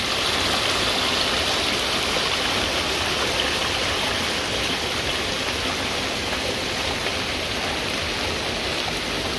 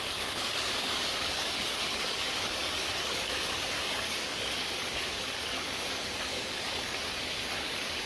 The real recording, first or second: first